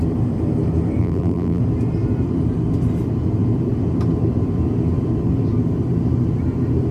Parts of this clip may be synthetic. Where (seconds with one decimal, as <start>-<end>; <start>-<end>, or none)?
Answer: 1.0-1.6